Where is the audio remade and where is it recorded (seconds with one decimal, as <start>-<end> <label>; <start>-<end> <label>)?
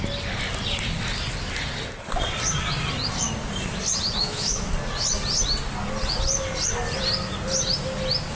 0.0-4.2 recorded; 4.2-4.7 remade; 4.7-8.3 recorded